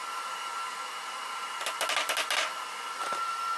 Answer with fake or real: real